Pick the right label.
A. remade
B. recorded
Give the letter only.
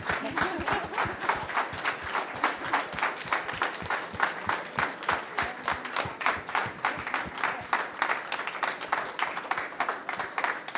B